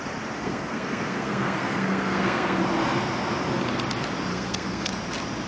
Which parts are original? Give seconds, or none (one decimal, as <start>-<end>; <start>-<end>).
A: 0.0-0.4; 2.6-4.3; 4.9-5.5